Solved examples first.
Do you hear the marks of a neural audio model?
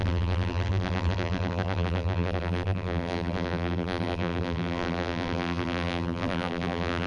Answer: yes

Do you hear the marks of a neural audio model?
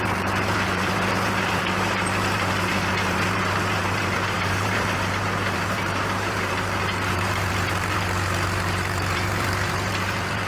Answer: yes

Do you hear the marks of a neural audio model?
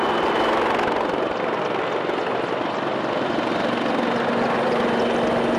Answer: no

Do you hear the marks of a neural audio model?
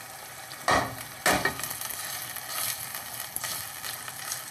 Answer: no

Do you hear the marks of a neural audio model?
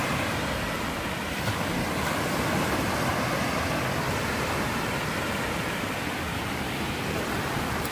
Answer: yes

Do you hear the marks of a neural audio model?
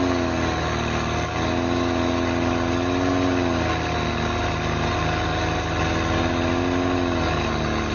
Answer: no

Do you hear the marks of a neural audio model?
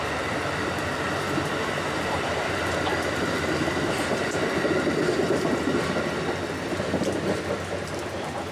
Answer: no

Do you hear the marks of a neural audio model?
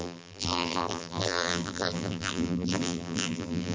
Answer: yes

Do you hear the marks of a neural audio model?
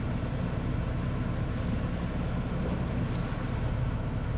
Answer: no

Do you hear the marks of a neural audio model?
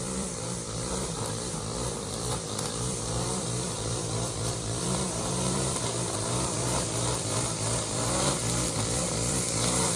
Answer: yes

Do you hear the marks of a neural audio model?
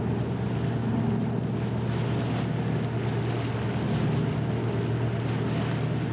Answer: no